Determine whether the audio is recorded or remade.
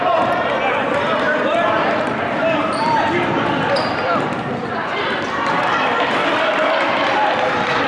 remade